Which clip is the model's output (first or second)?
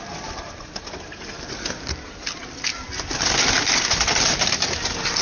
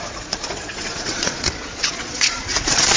second